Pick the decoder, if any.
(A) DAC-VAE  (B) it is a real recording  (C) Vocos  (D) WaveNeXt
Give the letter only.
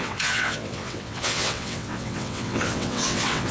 D